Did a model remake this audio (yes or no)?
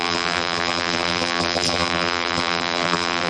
yes